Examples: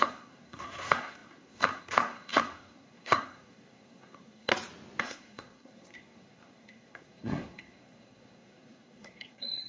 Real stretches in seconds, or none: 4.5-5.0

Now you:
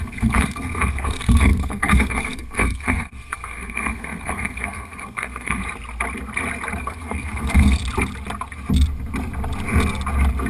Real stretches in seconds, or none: 5.6-6.8; 7.8-10.5

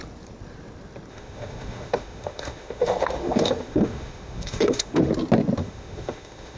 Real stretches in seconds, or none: 0.0-1.1; 5.1-5.6

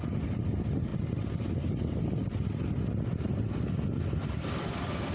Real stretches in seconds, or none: 0.0-5.1

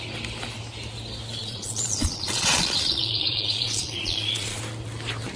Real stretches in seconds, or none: 0.0-1.4; 4.6-5.4

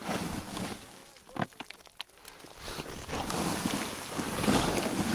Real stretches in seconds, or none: 1.0-4.1